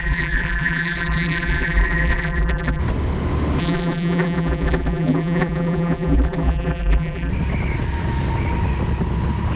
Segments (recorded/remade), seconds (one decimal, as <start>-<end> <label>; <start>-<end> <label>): 0.0-2.8 remade; 2.8-3.6 recorded; 3.6-7.3 remade; 7.3-9.6 recorded